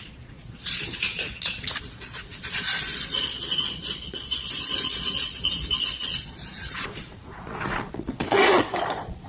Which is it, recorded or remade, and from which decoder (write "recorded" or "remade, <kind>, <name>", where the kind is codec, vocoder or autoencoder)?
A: remade, vocoder, Vocos